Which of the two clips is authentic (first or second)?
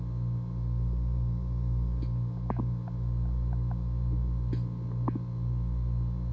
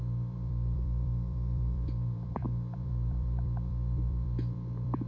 first